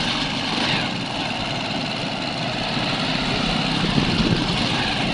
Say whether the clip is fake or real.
real